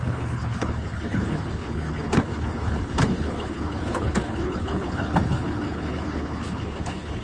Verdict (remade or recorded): remade